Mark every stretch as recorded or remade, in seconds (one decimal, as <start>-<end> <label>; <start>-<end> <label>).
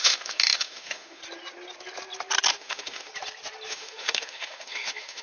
0.0-1.2 remade; 1.2-2.5 recorded; 2.5-3.1 remade; 3.1-3.7 recorded; 3.7-5.2 remade